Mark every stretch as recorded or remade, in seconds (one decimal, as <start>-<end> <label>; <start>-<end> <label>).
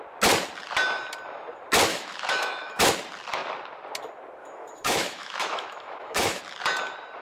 0.0-1.9 recorded; 1.9-2.8 remade; 2.8-4.4 recorded; 4.4-6.4 remade; 6.4-7.2 recorded